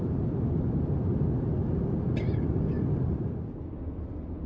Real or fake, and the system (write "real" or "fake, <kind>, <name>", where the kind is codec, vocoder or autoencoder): real